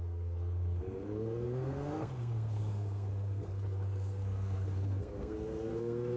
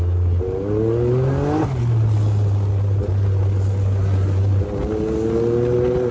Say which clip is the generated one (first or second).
first